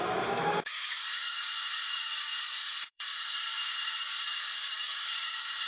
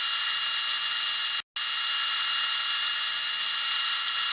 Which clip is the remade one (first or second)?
first